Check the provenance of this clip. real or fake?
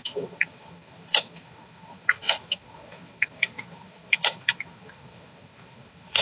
fake